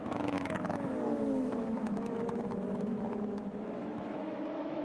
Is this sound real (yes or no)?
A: no